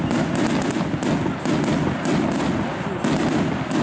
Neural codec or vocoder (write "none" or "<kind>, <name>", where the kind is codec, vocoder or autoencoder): none